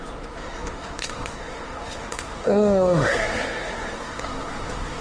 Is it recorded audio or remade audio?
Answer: remade